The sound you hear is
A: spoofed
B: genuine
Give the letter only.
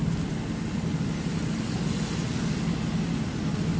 B